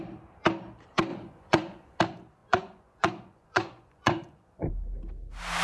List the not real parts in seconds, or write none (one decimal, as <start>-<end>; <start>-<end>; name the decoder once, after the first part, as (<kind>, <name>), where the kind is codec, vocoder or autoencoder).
1.1-2.0 (vocoder, Vocos); 2.4-4.6